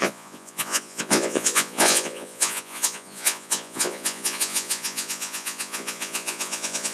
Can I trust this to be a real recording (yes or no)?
no